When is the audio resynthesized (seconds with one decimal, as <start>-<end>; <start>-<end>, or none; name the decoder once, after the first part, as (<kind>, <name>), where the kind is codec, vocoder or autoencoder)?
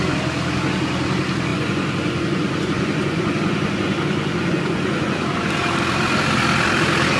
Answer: 1.5-5.4 (vocoder, Vocos)